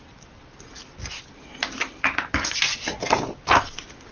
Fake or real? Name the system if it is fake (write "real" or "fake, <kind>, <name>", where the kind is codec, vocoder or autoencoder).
real